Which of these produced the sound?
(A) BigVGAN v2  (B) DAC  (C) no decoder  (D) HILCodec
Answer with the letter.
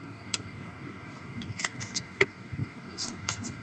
B